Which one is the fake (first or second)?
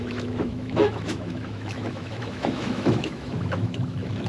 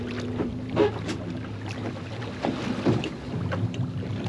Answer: first